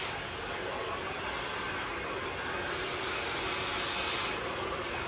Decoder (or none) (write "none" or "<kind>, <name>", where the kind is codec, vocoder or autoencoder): none